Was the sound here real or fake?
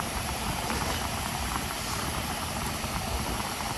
fake